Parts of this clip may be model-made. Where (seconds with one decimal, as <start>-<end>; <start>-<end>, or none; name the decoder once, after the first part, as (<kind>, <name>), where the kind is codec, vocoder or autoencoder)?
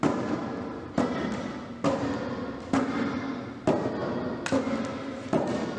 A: none